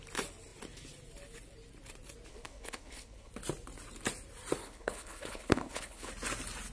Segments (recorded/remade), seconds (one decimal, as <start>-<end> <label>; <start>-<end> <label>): 0.0-2.3 recorded; 2.3-3.3 remade; 3.3-4.6 recorded; 4.6-6.1 remade; 6.1-6.7 recorded